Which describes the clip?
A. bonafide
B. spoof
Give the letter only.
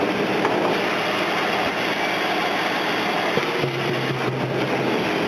A